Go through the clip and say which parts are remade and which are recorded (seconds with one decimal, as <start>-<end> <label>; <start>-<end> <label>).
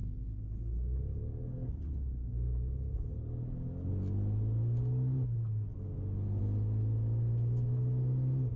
0.0-8.6 recorded